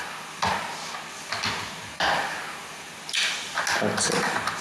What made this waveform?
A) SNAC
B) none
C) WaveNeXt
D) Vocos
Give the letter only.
B